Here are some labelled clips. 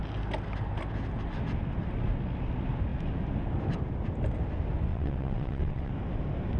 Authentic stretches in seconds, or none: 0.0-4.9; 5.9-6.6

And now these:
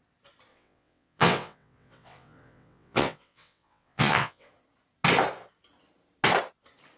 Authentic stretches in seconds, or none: 0.0-0.5; 4.5-7.0

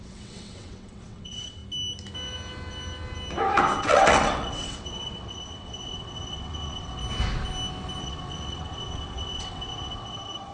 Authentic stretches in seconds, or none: 1.6-3.8; 7.0-8.0

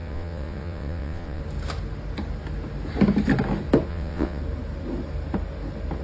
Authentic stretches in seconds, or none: 1.4-3.9; 4.4-6.0